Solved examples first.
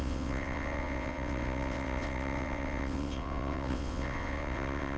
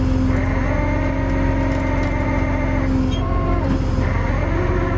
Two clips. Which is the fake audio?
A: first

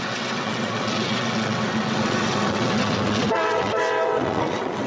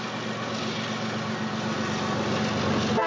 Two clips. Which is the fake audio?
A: first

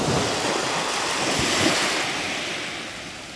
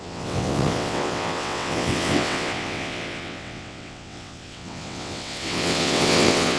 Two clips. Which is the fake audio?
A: second